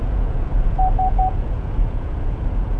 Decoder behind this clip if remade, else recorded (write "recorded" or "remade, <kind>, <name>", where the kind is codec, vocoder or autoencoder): remade, vocoder, Vocos